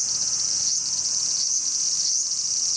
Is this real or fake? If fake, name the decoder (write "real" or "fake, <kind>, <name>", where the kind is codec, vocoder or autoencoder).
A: real